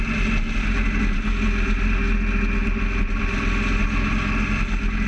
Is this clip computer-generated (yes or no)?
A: no